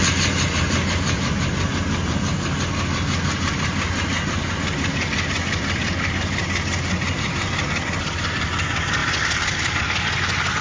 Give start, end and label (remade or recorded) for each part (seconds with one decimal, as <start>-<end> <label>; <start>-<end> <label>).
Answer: 0.0-10.6 recorded